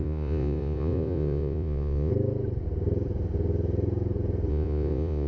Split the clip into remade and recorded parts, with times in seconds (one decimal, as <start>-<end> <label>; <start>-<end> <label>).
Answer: 0.0-2.1 remade; 2.1-4.5 recorded; 4.5-5.3 remade